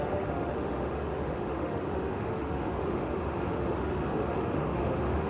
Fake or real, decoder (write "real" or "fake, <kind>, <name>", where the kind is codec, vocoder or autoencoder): fake, autoencoder, DAC-VAE